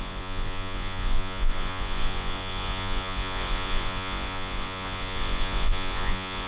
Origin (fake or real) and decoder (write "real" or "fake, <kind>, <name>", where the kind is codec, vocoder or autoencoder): fake, vocoder, Vocos